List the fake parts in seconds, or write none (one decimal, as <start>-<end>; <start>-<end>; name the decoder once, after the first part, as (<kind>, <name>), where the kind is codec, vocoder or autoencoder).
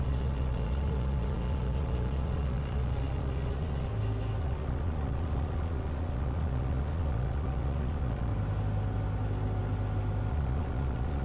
0.0-3.9 (vocoder, Vocos); 4.4-8.3; 10.3-11.2